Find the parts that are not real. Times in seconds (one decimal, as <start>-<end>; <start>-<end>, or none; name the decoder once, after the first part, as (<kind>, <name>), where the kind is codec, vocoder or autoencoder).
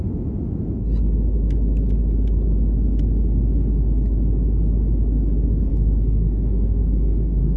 5.7-7.6 (codec, SNAC)